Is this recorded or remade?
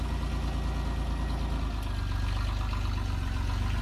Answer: recorded